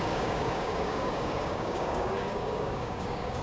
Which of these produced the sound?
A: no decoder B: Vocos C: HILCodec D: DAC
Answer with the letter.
D